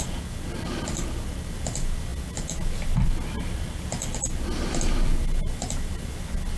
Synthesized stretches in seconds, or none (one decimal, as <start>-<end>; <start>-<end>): none